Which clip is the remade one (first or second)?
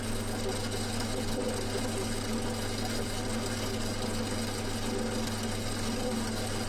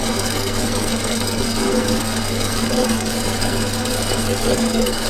second